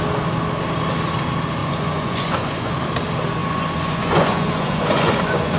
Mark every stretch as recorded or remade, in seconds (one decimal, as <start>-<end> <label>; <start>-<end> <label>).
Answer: 0.0-1.6 recorded; 1.6-2.7 remade; 2.7-3.4 recorded; 3.4-5.6 remade